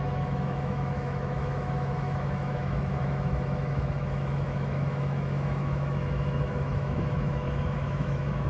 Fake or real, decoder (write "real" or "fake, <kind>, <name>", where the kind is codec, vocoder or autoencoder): fake, autoencoder, DAC-VAE